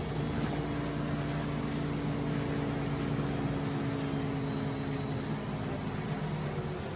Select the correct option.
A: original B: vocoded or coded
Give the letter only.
A